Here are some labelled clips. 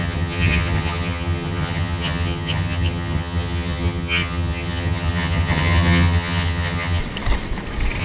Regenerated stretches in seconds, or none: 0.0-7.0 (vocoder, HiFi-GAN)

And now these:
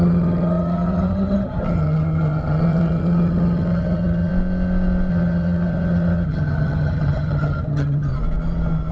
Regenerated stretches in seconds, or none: 0.0-4.3 (vocoder, HiFi-GAN); 5.1-8.1

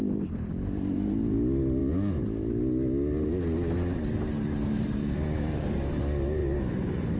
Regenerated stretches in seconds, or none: none

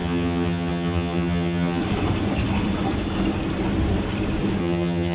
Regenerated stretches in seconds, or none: 0.0-1.8 (vocoder, HiFi-GAN); 4.6-5.1

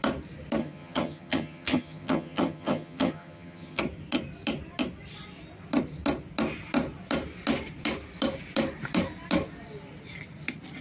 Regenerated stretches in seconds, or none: 0.6-3.8 (vocoder, HiFi-GAN)

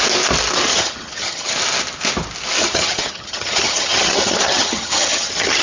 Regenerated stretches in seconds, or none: 0.7-1.5 (vocoder, HiFi-GAN); 2.6-5.6